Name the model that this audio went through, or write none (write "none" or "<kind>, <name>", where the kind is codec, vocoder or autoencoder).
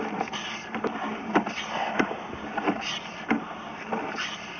none